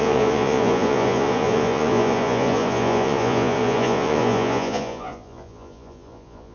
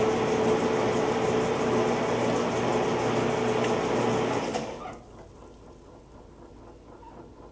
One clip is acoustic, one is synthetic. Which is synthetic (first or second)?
first